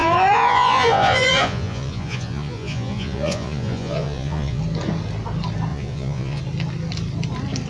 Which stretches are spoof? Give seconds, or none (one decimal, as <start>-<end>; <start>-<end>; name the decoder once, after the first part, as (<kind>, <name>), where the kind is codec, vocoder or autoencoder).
0.0-4.6 (vocoder, Vocos); 5.7-6.4